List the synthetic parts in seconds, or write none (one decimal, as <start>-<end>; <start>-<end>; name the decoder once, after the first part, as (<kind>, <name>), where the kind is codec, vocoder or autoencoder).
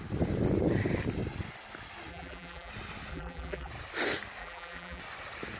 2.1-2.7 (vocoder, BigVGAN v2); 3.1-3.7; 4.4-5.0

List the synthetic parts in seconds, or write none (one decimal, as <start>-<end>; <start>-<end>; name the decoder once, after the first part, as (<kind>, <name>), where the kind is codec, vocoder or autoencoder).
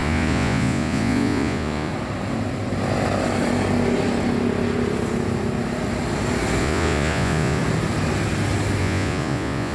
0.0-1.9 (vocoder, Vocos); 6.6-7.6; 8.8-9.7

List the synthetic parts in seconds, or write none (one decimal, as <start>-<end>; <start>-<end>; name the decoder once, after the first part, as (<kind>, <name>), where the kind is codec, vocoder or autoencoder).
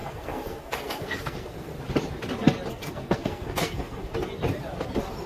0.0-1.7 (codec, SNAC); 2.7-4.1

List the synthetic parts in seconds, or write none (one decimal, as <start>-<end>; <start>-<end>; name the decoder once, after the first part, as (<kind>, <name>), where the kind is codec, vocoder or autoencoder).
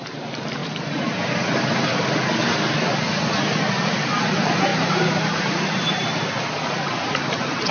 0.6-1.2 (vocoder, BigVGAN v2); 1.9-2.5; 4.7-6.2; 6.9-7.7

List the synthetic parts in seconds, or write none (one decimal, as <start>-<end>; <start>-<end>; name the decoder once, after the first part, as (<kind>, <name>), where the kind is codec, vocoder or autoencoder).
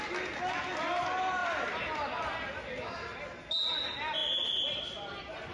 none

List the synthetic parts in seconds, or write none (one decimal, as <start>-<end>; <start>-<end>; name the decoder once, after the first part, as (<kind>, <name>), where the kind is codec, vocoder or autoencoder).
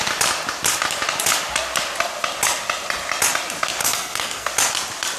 3.8-4.5 (codec, SNAC)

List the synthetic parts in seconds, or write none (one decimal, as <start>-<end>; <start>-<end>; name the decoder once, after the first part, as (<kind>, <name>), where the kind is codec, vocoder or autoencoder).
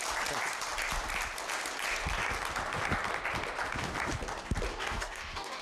4.7-5.6 (codec, DAC)